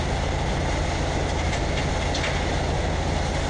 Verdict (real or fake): real